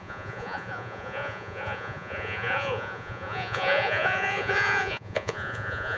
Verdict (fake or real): fake